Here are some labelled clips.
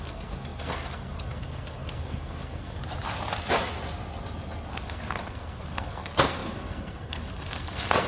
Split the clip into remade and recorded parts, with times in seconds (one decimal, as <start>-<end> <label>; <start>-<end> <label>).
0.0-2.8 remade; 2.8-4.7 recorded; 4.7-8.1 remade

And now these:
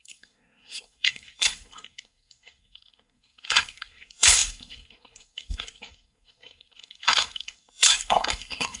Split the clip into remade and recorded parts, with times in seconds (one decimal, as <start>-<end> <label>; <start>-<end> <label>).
0.0-8.8 remade

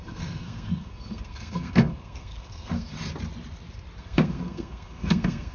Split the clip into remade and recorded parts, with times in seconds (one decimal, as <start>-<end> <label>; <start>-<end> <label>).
0.0-2.9 remade; 2.9-4.0 recorded; 4.0-5.5 remade

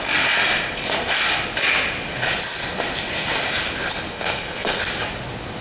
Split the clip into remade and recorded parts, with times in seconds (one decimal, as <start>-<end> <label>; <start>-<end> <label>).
0.0-4.1 recorded; 4.1-4.8 remade; 4.8-5.6 recorded